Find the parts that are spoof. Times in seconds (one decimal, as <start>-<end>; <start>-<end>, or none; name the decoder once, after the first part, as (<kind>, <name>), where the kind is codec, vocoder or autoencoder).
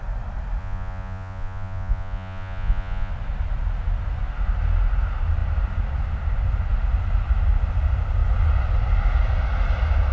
0.6-3.1 (vocoder, Vocos)